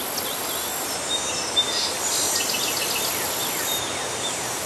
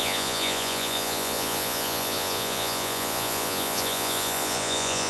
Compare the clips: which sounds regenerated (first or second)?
second